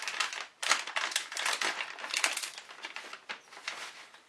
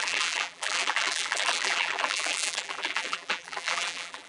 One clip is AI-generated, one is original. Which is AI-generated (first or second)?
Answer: second